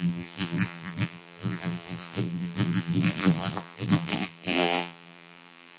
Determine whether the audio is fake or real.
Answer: fake